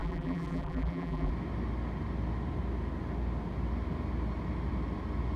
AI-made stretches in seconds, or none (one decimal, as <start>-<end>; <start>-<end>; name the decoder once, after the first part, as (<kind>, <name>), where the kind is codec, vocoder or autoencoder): 0.0-1.3 (vocoder, BigVGAN v2)